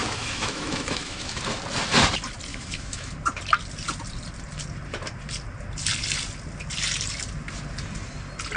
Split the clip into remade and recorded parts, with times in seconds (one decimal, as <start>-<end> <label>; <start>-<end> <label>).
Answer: 0.0-1.4 remade; 1.4-2.5 recorded; 2.5-3.1 remade; 3.1-8.6 recorded